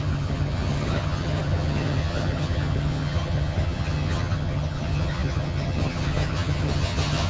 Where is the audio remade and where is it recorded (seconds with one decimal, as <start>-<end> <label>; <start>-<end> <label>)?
0.0-7.3 remade